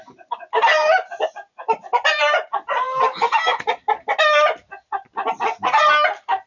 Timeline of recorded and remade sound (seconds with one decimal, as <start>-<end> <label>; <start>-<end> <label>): 0.0-6.5 recorded